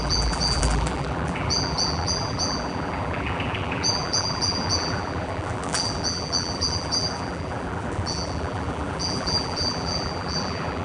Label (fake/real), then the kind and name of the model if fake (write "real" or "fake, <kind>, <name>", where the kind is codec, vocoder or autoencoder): fake, vocoder, BigVGAN v2